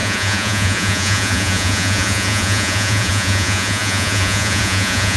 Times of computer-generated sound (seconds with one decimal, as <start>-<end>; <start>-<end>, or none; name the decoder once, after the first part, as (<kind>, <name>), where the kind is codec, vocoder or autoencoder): 0.0-5.2 (vocoder, Vocos)